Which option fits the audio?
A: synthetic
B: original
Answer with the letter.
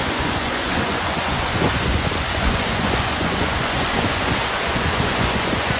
A